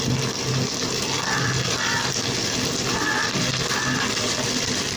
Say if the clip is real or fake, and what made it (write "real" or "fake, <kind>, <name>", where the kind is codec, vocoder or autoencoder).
fake, vocoder, BigVGAN v2